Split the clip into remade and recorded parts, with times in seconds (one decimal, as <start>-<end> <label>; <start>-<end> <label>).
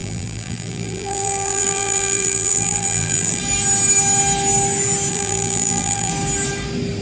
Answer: 0.0-3.4 remade; 3.4-5.1 recorded; 5.1-6.1 remade; 6.1-7.0 recorded